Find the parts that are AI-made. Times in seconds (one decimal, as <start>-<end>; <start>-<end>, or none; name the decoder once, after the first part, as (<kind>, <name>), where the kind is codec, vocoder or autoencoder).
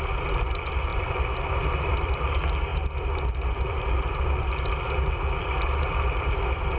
none